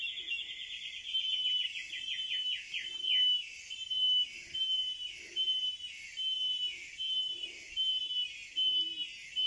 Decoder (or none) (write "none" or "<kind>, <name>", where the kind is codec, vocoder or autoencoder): none